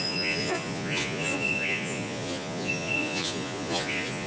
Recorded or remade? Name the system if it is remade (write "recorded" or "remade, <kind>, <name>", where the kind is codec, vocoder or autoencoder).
remade, vocoder, Vocos